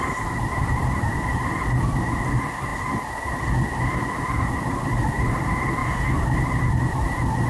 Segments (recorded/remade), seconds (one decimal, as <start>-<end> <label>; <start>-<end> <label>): 0.0-7.5 recorded